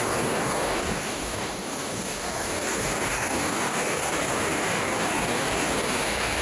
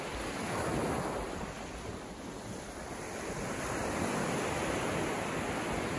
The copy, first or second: first